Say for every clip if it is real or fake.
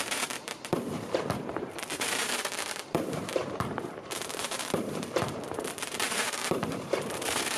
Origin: fake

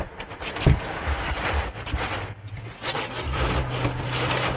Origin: real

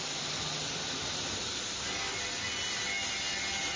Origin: real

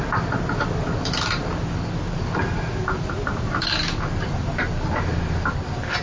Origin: real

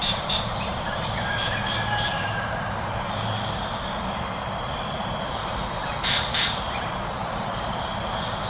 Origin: fake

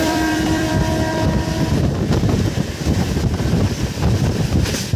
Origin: fake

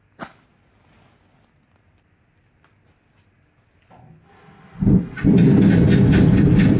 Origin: real